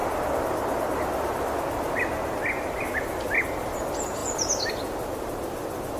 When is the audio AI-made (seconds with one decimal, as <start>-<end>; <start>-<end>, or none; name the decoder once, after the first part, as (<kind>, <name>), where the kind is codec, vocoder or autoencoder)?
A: none